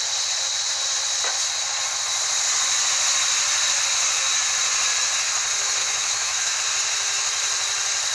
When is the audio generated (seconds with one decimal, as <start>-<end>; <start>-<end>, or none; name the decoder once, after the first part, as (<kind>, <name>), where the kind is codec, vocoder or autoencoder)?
5.8-6.6 (autoencoder, DAC-VAE)